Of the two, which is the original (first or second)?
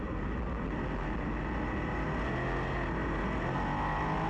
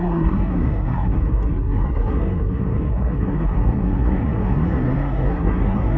first